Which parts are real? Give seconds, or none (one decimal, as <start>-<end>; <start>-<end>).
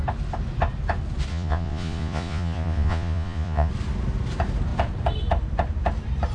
0.0-1.3; 3.7-6.3